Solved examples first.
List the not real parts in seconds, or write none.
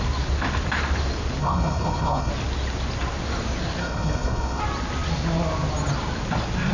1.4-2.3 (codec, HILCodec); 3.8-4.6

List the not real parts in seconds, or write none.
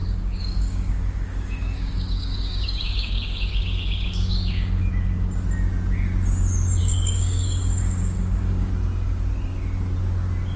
0.0-4.9 (codec, DAC); 6.8-8.7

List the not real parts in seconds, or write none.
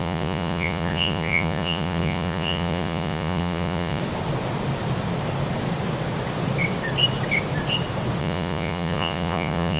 0.0-4.0 (vocoder, Vocos); 8.2-9.8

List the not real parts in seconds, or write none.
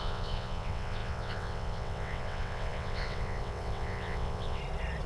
0.0-4.6 (vocoder, WaveNeXt)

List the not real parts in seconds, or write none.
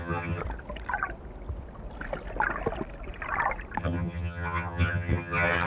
0.0-0.4 (vocoder, HiFi-GAN); 3.8-5.7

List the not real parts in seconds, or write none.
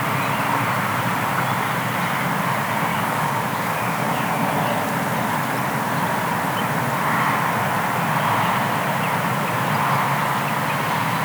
2.9-4.5 (codec, DAC)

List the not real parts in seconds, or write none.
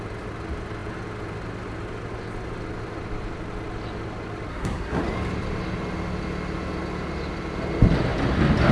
4.5-5.0 (codec, SNAC)